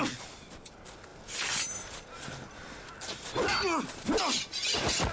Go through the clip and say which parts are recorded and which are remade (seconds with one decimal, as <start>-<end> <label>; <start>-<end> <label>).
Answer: 0.0-5.1 recorded